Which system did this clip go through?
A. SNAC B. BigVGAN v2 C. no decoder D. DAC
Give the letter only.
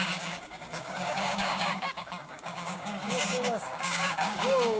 D